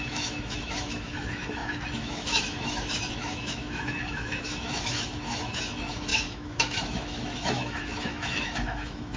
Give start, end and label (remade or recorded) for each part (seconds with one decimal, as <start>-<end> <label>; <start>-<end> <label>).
0.0-9.2 remade